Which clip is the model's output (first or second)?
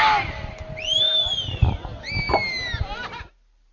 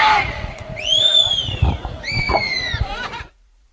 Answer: second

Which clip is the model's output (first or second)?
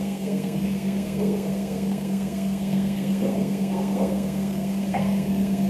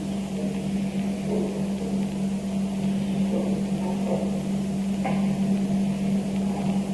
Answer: first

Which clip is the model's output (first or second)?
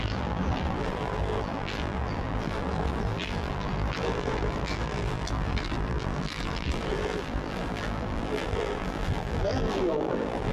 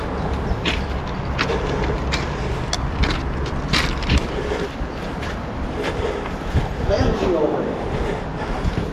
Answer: first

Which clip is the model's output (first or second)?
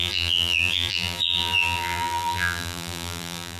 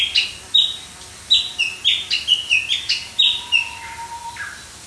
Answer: first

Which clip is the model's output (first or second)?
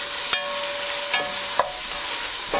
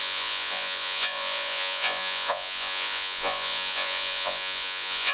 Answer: second